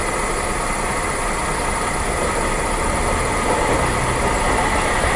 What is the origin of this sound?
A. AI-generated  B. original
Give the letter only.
B